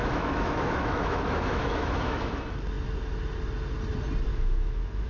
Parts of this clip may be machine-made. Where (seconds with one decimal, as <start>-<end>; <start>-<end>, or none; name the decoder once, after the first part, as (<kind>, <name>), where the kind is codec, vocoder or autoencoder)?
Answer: 0.0-2.4 (autoencoder, DAC-VAE); 4.3-5.1